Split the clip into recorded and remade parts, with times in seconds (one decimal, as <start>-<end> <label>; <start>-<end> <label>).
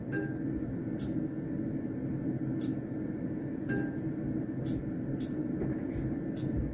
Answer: 0.0-6.7 recorded